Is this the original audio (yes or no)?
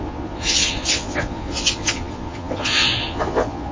no